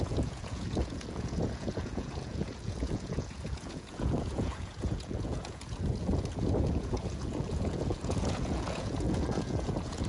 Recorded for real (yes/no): no